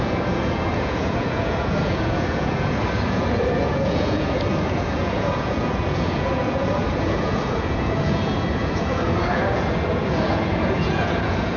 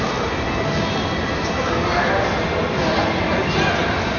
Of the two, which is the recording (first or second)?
second